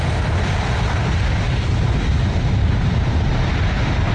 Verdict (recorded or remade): recorded